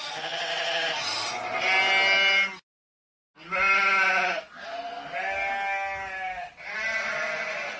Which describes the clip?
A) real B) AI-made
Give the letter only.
A